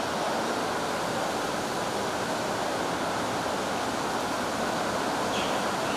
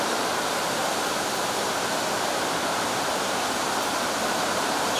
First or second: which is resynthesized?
second